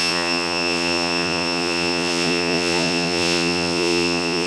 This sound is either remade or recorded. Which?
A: remade